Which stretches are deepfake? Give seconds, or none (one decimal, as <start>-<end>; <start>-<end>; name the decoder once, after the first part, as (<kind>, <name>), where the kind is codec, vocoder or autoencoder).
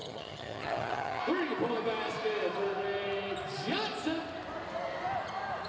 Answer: 0.0-1.2 (vocoder, HiFi-GAN)